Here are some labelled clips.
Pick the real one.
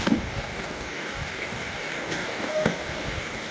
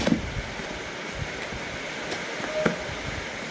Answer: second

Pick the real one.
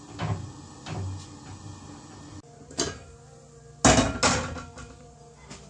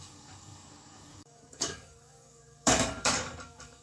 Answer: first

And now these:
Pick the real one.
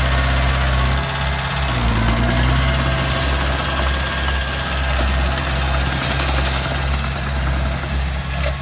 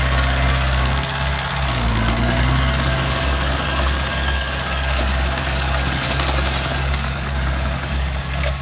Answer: first